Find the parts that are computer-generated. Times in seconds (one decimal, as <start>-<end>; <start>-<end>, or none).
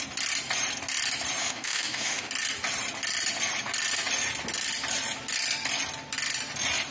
1.4-2.3